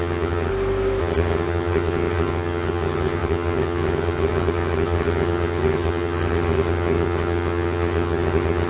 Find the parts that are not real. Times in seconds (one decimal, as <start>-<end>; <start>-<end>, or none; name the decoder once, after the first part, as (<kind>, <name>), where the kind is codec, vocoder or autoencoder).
0.0-0.5 (vocoder, HiFi-GAN); 1.0-8.7